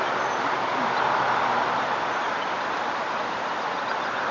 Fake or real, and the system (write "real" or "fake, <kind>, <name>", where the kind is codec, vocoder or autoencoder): real